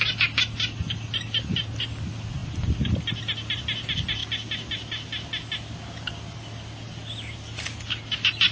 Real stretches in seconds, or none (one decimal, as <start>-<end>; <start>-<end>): 0.0-8.5